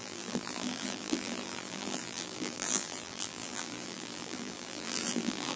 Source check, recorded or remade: remade